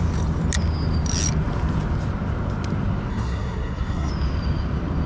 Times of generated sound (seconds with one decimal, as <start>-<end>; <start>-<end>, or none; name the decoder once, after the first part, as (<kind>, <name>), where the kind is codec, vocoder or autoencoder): 3.1-4.1 (codec, SNAC)